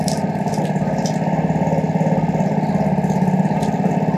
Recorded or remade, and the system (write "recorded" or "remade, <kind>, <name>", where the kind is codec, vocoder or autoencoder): recorded